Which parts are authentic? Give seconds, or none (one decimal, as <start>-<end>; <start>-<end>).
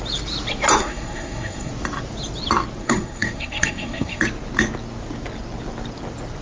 0.0-0.8; 1.7-2.8; 4.2-6.4